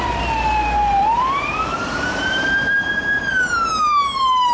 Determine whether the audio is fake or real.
fake